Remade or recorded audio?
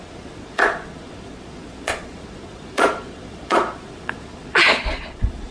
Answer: remade